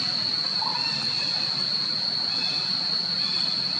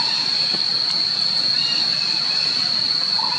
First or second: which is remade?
second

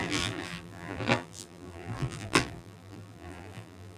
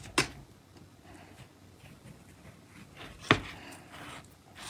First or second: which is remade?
first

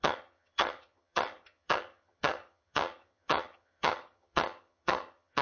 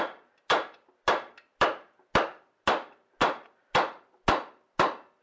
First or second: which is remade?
first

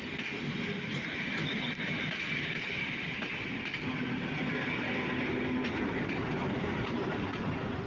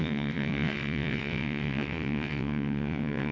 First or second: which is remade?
second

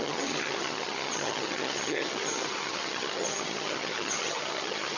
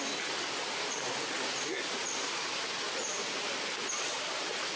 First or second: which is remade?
first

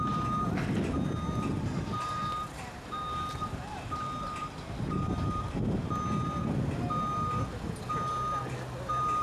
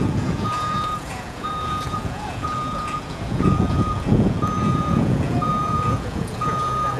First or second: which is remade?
second